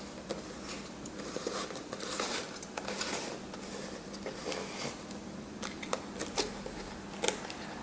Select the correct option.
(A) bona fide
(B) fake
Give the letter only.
A